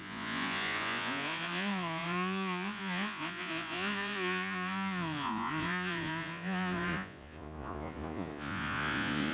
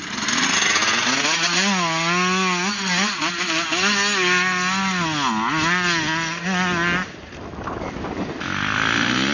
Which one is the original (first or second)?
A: second